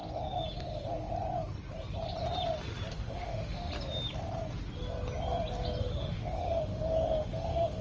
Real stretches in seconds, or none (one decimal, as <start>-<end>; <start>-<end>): 0.0-2.9; 3.7-5.8